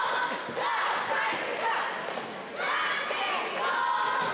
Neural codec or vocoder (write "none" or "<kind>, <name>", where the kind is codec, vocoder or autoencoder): none